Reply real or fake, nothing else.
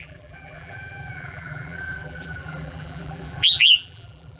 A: fake